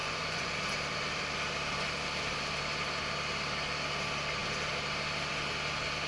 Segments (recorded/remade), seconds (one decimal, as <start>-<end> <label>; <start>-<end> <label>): 0.0-0.5 remade; 0.5-6.1 recorded